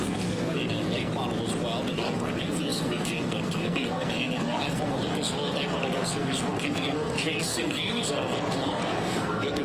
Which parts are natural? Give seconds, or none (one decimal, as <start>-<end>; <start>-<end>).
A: 1.1-1.9